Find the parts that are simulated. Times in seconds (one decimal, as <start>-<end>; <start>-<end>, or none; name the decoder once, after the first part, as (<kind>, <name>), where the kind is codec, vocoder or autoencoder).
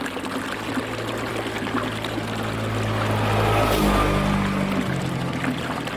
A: none